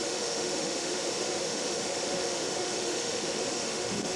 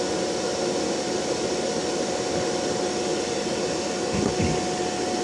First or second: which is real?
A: second